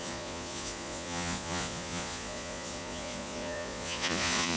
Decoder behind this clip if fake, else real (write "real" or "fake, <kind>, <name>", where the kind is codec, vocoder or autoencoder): fake, vocoder, Vocos